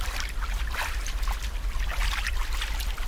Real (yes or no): yes